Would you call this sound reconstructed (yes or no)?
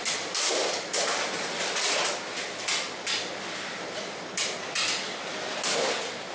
no